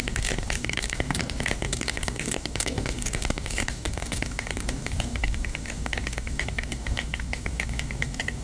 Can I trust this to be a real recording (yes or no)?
no